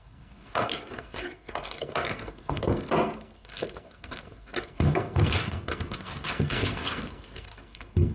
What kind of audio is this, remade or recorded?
remade